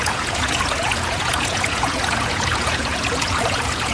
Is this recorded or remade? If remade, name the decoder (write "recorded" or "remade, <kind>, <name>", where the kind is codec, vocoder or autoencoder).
remade, vocoder, Vocos